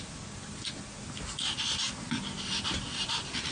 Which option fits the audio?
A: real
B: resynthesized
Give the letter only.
A